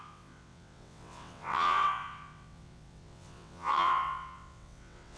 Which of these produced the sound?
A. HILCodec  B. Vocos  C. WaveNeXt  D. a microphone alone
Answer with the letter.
C